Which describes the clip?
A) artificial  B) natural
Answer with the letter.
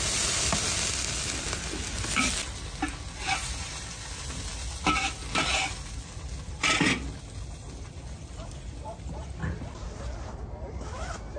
B